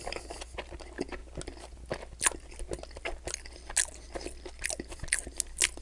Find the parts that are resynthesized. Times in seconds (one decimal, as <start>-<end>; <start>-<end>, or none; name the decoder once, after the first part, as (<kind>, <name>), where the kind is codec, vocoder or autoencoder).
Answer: none